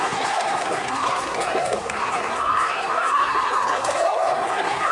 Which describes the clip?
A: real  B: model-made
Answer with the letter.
B